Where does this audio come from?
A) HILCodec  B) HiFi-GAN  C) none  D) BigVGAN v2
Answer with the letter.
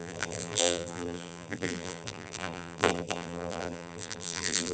D